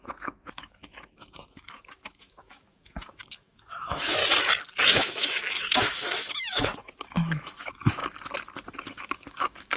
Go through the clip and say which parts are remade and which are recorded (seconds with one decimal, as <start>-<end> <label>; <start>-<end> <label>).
0.0-4.2 remade; 4.2-4.8 recorded; 4.8-8.0 remade; 8.0-8.7 recorded; 8.7-9.8 remade